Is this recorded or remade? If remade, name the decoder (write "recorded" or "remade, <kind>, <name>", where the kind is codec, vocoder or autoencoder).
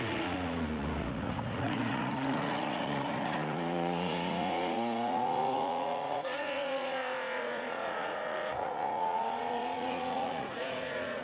remade, vocoder, Vocos